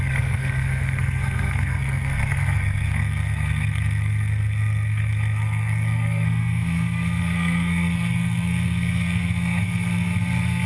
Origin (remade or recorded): remade